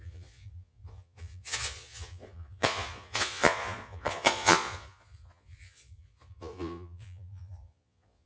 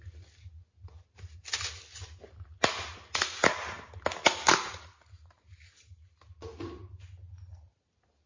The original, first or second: second